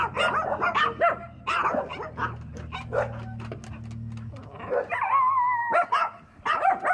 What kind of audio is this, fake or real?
real